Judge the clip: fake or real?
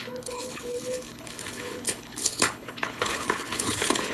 fake